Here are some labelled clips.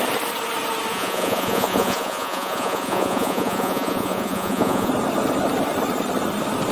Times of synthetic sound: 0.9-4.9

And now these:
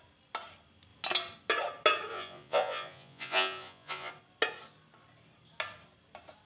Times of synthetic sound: 2.1-4.1

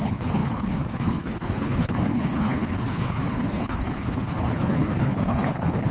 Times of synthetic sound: 0.0-5.9

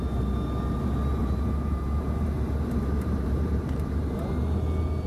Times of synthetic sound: 1.2-4.3